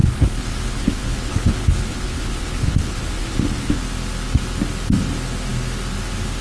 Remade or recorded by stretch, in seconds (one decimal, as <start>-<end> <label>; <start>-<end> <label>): 0.0-3.8 remade; 3.8-6.4 recorded